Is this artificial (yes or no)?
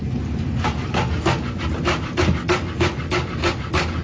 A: no